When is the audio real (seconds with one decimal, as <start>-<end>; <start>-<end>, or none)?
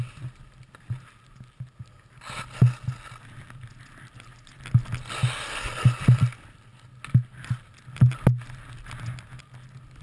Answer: 0.0-10.0